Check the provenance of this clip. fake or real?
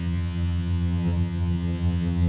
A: fake